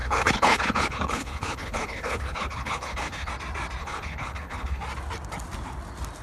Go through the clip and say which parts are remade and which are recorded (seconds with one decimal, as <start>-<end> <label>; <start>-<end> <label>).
0.0-3.3 remade; 3.3-3.8 recorded; 3.8-4.8 remade; 4.8-6.2 recorded